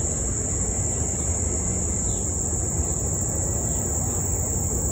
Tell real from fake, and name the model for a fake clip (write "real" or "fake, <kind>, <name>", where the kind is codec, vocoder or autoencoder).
real